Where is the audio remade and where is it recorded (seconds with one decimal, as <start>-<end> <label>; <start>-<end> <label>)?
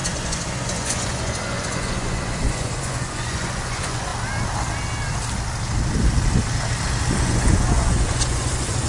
0.0-4.1 remade; 4.1-7.2 recorded; 7.2-8.9 remade